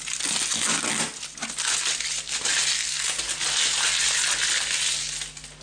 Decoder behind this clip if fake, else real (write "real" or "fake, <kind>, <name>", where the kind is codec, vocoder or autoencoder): real